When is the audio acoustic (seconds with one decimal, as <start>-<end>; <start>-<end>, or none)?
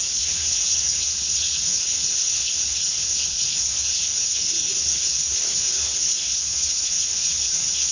none